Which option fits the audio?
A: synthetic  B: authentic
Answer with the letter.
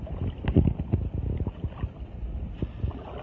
B